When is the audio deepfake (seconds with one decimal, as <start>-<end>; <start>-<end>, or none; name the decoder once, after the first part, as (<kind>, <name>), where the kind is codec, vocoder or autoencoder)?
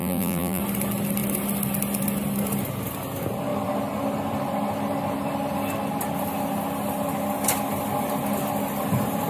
0.0-0.6 (vocoder, BigVGAN v2)